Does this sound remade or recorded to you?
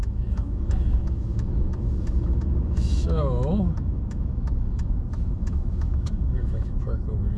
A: remade